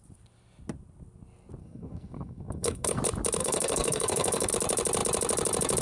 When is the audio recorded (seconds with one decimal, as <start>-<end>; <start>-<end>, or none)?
0.0-1.6; 3.0-3.4; 4.5-5.8